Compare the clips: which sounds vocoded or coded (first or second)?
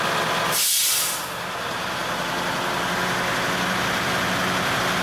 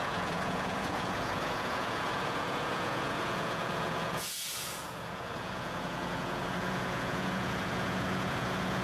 second